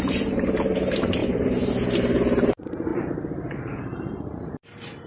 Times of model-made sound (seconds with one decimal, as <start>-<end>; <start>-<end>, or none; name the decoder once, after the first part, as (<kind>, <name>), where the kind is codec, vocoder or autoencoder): 0.0-5.1 (vocoder, BigVGAN v2)